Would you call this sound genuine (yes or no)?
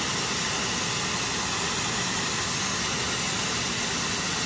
yes